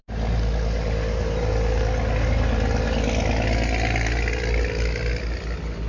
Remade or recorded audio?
recorded